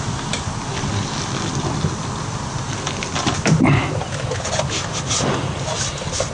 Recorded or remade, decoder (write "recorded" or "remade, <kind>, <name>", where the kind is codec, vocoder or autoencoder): recorded